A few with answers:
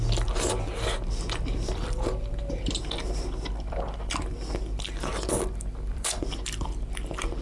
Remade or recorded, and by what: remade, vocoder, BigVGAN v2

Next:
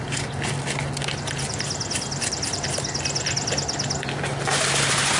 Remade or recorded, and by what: recorded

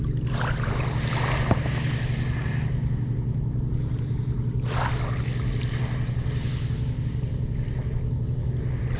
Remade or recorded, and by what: recorded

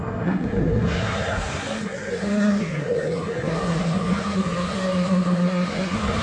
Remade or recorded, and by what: remade, codec, SNAC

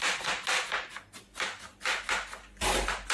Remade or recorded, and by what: recorded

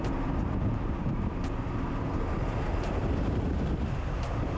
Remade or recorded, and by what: recorded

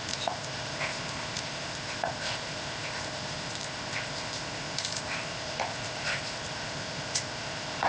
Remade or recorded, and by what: remade, codec, ZipCodec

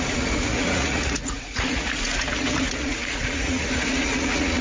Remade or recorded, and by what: remade, vocoder, Vocos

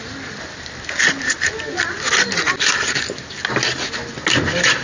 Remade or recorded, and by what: recorded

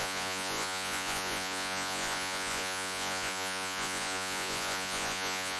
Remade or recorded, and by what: remade, vocoder, Vocos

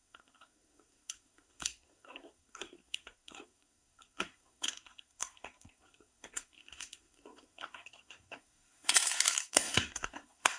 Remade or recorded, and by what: remade, codec, SNAC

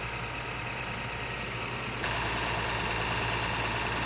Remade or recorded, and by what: recorded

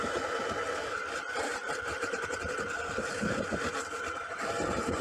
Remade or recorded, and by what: remade, vocoder, BigVGAN v2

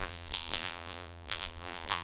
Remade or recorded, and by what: remade, vocoder, BigVGAN v2